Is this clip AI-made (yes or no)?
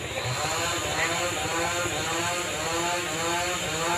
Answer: no